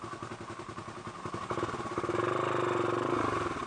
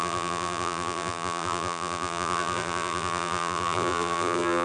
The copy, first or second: second